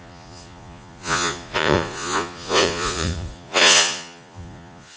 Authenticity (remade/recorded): remade